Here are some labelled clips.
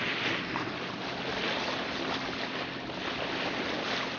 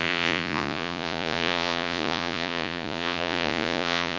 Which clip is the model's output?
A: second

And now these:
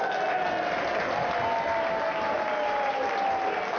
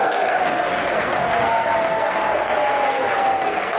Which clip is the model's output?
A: second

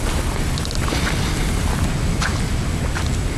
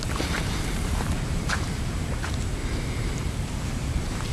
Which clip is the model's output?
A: second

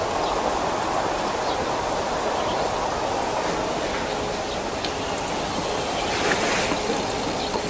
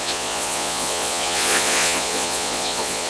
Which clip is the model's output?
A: second